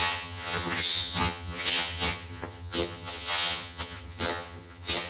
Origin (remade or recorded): remade